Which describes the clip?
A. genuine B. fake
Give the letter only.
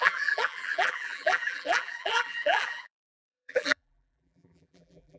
B